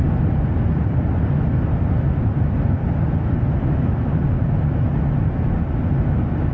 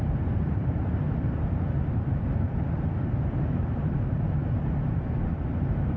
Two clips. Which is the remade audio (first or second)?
second